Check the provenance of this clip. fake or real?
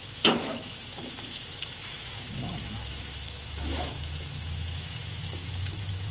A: fake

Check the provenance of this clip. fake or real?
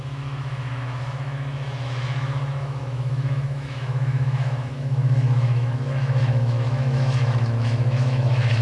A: fake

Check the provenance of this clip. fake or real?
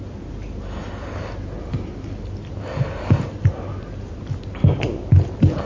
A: real